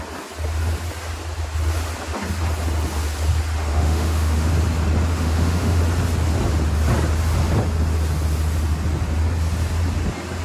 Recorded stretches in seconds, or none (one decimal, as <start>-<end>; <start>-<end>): 0.0-3.7; 4.5-5.1; 5.8-10.4